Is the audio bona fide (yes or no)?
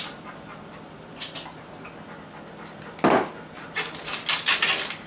yes